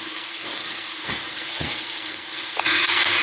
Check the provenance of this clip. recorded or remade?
remade